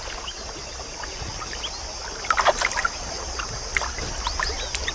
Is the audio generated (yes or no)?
no